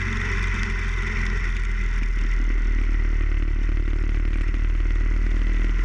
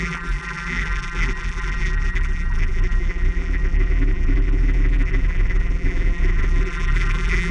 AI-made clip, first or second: second